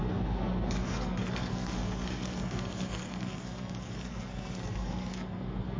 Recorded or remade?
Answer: remade